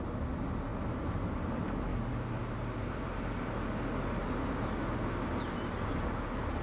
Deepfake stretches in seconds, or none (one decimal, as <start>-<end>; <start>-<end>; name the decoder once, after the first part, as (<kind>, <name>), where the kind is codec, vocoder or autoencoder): none